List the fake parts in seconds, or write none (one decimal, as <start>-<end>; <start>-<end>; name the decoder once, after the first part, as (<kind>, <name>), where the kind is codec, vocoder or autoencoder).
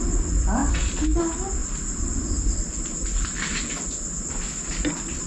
1.6-4.7 (vocoder, BigVGAN v2)